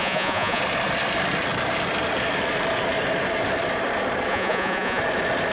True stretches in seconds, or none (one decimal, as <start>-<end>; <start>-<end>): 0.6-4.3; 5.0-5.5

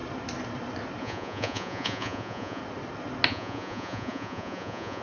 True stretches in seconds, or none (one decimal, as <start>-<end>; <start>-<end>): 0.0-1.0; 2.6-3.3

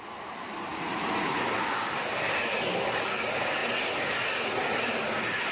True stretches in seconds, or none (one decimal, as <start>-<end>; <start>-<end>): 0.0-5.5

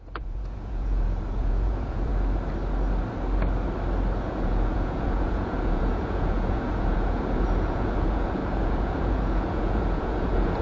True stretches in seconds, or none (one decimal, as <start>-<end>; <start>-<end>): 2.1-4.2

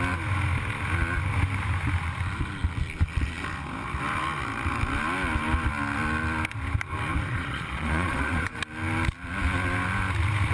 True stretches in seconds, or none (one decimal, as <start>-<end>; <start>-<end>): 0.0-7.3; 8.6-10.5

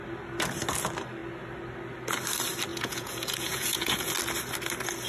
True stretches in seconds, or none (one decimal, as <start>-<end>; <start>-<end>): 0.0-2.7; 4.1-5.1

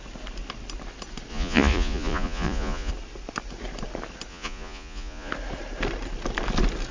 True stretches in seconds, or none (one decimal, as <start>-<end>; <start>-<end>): 0.0-1.3; 2.9-4.3; 5.3-6.9